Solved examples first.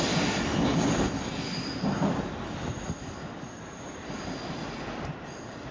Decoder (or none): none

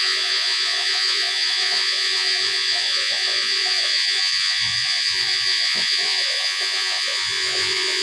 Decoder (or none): vocoder, Vocos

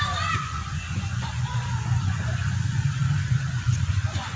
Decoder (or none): vocoder, Vocos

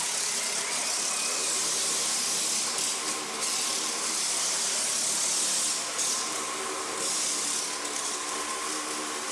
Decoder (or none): none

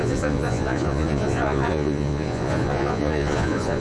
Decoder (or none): vocoder, Vocos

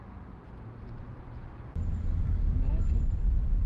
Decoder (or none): none